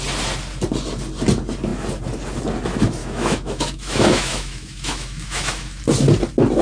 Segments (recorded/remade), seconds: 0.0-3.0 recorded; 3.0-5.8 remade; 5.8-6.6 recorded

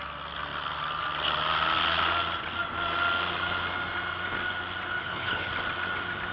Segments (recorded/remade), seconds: 0.0-5.0 recorded; 5.0-5.5 remade; 5.5-6.3 recorded

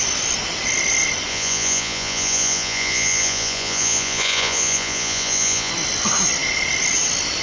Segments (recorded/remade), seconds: 0.0-1.3 recorded; 1.3-5.7 remade; 5.7-7.4 recorded

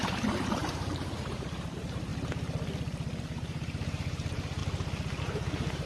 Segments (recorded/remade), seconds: 0.0-2.1 remade; 2.1-3.2 recorded; 3.2-4.6 remade; 4.6-5.2 recorded; 5.2-5.9 remade

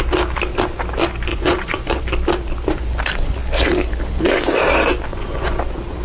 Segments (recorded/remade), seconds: 0.0-1.3 recorded; 1.3-2.0 remade; 2.0-5.1 recorded; 5.1-5.6 remade; 5.6-6.0 recorded

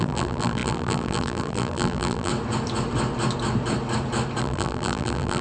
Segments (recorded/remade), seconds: 0.0-2.3 remade; 2.3-4.4 recorded; 4.4-5.4 remade